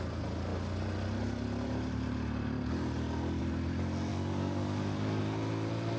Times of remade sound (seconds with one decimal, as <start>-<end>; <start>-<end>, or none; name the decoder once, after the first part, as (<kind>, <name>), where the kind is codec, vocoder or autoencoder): 4.1-5.2 (codec, DAC)